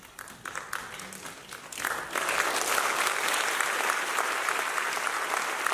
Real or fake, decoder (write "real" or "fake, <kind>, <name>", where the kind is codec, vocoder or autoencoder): real